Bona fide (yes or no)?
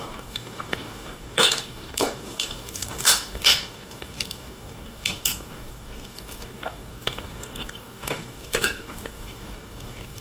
no